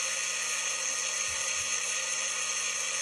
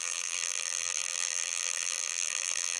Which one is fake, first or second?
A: second